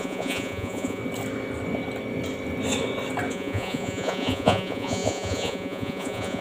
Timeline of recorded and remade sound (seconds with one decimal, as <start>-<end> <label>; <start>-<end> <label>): 0.0-1.0 remade; 1.0-3.3 recorded; 3.3-6.4 remade